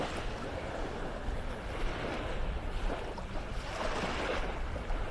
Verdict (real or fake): real